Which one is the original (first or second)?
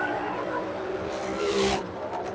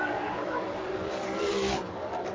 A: first